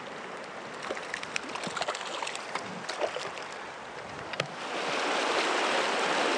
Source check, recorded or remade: recorded